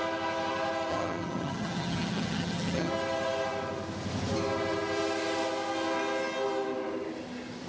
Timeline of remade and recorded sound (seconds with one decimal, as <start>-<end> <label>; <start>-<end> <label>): 0.0-0.9 recorded; 0.9-2.9 remade; 2.9-7.7 recorded